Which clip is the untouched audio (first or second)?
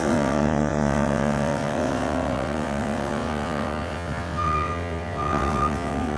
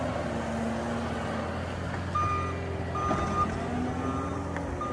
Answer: second